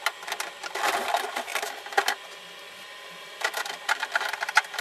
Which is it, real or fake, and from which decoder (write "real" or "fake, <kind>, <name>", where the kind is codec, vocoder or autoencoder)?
fake, vocoder, BigVGAN v2